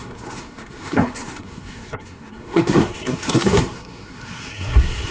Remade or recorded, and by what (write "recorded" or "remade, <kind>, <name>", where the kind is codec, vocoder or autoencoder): remade, codec, SNAC